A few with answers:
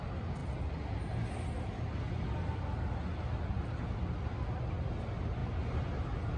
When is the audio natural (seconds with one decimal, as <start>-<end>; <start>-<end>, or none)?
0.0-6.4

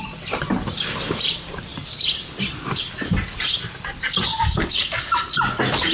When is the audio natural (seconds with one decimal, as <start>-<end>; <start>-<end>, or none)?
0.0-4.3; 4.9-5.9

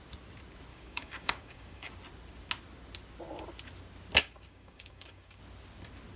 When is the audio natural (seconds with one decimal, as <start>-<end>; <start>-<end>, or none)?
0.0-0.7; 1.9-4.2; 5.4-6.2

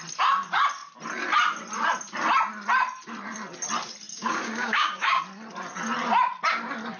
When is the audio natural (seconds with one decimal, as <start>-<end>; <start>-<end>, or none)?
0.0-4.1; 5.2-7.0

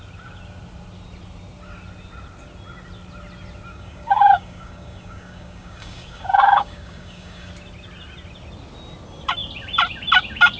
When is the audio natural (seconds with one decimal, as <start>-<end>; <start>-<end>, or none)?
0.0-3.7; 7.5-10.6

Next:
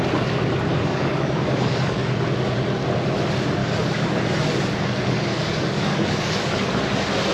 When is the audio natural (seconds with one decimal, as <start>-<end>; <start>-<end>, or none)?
0.0-0.7; 2.2-3.6; 6.7-7.3

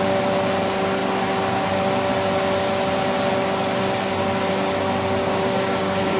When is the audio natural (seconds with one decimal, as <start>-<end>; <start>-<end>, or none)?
0.0-5.2